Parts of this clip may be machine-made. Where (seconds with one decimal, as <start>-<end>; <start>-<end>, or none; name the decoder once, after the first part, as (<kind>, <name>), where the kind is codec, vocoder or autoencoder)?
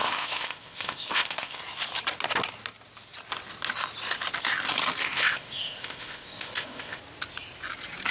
0.0-1.6 (codec, ZipCodec); 5.0-7.0